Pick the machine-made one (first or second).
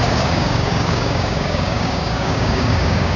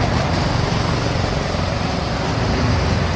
first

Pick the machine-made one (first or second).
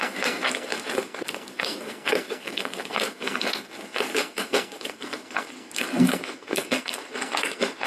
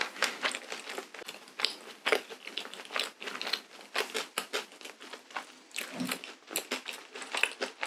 first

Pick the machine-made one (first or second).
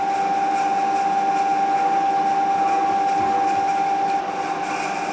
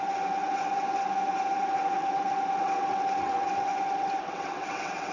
second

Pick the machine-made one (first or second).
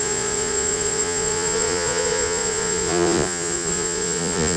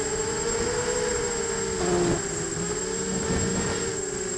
first